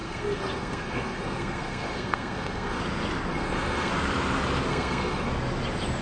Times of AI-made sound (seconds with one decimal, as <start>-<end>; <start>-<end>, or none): 0.0-2.8; 3.3-3.9; 4.7-5.3